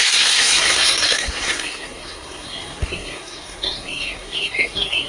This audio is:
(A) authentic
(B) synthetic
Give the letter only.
B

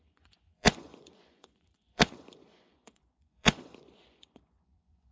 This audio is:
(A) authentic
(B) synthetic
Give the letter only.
B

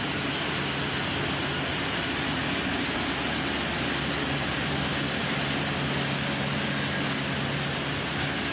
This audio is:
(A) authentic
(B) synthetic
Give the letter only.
A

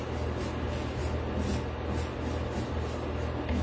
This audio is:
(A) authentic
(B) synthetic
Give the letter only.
A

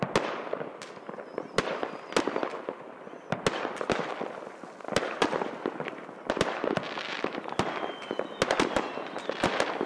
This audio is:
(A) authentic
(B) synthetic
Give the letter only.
A